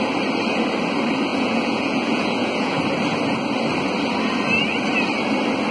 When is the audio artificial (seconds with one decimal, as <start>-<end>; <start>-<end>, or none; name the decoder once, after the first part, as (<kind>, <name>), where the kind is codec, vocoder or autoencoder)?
1.3-2.8 (vocoder, Vocos)